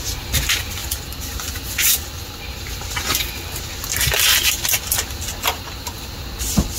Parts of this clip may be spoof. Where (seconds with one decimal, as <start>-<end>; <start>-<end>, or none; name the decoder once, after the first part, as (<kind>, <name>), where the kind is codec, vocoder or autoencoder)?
none